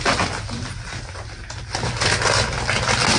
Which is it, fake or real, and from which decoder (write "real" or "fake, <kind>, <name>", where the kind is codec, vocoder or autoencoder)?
real